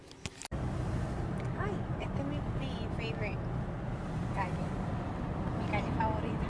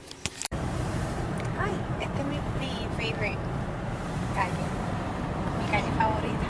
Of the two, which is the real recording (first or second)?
first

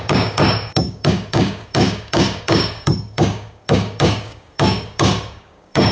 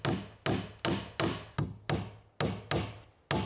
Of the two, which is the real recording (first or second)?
second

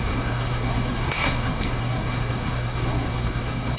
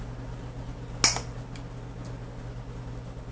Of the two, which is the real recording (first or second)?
second